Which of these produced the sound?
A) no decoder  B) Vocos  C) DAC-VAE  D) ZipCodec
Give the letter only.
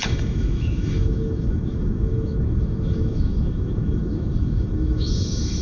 C